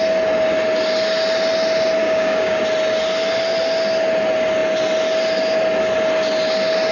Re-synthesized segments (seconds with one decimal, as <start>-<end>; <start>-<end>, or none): 2.0-2.6